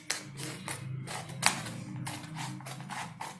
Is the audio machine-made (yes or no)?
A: no